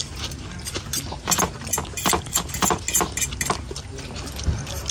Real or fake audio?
real